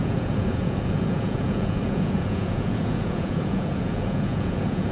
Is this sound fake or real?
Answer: fake